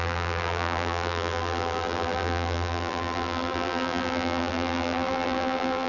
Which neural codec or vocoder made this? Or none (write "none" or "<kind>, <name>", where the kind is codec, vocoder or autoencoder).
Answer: vocoder, BigVGAN v2